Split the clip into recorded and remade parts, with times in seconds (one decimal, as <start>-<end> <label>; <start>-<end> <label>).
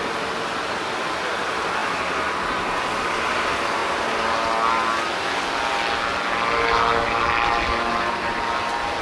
0.0-9.0 recorded